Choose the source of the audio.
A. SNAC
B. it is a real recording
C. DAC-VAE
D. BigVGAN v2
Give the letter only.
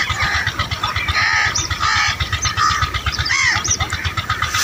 D